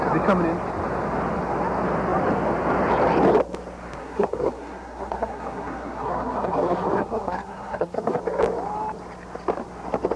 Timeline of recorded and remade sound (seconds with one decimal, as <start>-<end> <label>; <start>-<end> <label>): 0.0-4.0 recorded; 4.0-8.2 remade; 8.2-10.2 recorded